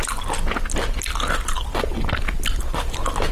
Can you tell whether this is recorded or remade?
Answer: recorded